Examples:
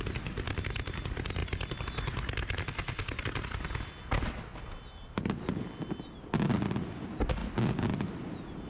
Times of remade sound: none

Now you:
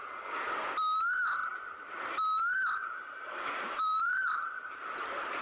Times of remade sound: 2.8-5.4

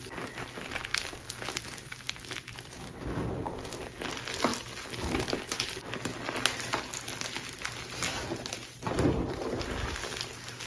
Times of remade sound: 0.9-3.9

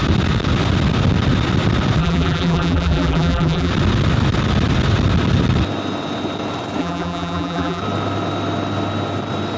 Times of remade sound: 2.0-3.7; 6.8-7.8

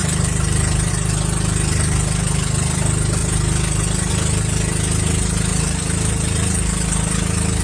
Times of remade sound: 0.0-0.9; 5.5-7.1

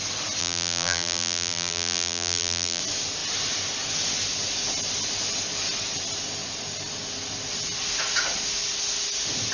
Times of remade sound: 0.4-2.8